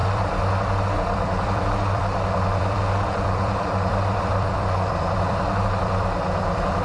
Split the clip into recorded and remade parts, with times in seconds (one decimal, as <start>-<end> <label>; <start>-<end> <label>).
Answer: 0.0-6.8 remade